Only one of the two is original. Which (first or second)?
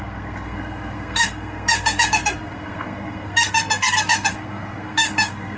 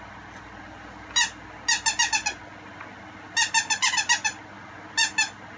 second